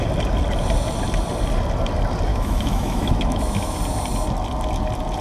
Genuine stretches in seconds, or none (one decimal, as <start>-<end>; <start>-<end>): 0.0-2.3; 3.8-5.2